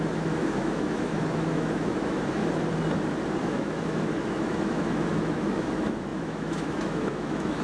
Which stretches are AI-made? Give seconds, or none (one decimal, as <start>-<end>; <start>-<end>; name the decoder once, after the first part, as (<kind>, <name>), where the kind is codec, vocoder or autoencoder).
0.0-2.4 (autoencoder, DAC-VAE); 3.4-7.6